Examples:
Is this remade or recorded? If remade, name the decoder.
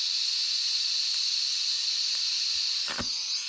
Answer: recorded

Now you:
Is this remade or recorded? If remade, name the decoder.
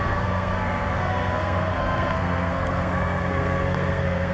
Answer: remade, codec, SNAC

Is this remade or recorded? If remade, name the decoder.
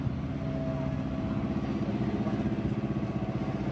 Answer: recorded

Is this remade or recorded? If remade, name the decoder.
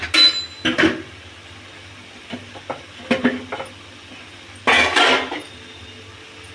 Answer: recorded